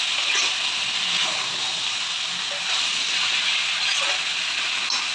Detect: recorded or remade recorded